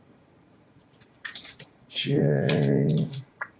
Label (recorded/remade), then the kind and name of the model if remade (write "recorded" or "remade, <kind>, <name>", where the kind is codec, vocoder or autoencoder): remade, vocoder, Vocos